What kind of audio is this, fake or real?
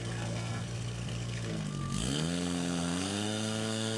fake